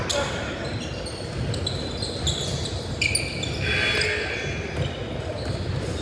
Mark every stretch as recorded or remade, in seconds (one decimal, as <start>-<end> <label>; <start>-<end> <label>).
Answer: 0.0-6.0 recorded